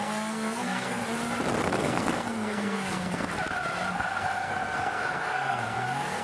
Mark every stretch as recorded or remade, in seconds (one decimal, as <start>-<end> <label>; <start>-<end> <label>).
0.0-1.0 remade; 1.0-1.6 recorded; 1.6-3.3 remade; 3.3-3.9 recorded; 3.9-6.2 remade